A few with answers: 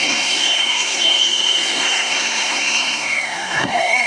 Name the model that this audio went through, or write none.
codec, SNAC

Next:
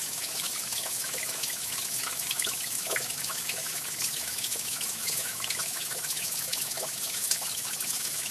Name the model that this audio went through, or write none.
autoencoder, DAC-VAE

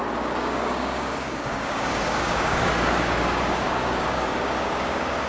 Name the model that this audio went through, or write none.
codec, DAC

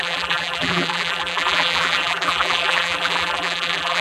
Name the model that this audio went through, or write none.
vocoder, BigVGAN v2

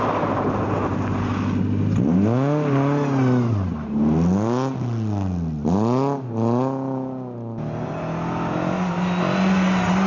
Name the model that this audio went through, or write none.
none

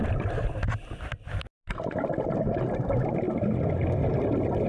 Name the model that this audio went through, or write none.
none